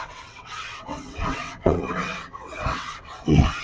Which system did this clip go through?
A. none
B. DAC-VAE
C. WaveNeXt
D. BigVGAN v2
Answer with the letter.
C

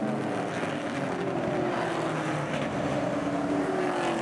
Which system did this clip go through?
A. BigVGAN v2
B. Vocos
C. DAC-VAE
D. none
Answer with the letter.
D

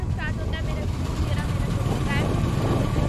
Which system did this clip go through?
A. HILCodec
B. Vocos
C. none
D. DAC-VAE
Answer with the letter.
C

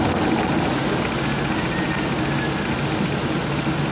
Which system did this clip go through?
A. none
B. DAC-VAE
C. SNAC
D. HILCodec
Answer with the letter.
A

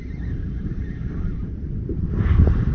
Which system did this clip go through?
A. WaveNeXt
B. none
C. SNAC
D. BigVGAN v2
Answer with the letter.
D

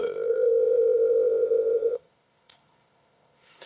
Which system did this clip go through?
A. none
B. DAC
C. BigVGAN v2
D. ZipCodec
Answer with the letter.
D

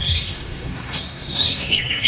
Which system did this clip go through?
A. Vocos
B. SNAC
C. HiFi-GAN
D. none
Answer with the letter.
B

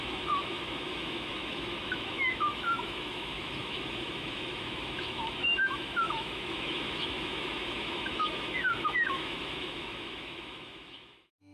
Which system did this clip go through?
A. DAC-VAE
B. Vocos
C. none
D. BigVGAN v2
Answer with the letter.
A